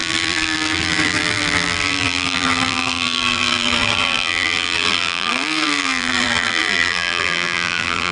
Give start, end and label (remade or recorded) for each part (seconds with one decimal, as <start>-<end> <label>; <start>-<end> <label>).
0.0-8.1 remade